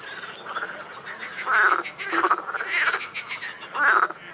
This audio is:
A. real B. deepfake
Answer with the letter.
A